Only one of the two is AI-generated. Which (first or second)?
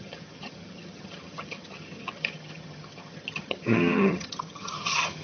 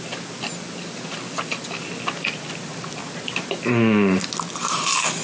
first